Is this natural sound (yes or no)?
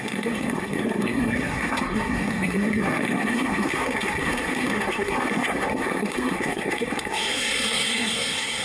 no